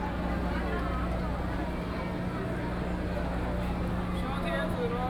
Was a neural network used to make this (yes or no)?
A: no